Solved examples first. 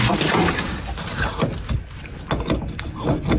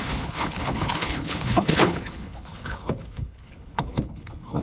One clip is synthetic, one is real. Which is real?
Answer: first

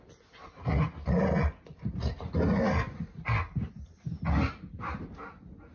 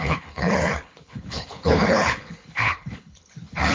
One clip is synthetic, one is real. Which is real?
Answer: first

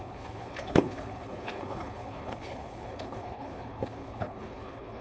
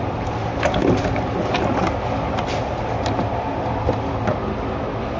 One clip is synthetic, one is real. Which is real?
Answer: second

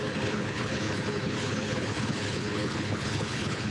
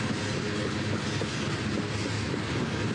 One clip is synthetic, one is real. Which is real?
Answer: second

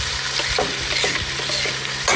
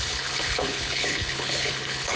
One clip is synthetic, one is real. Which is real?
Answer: first